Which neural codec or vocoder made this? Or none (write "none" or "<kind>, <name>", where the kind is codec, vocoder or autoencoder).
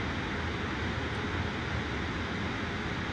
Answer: none